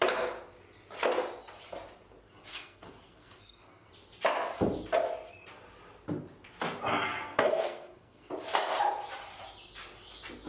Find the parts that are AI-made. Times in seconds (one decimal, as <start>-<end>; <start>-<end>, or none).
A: 2.5-3.9; 6.9-8.3